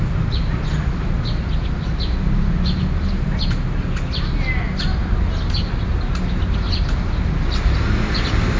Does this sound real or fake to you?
real